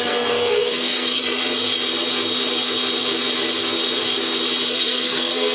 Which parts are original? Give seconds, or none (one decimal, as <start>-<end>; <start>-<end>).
1.4-4.7